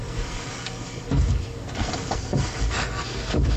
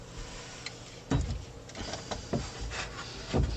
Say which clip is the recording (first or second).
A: second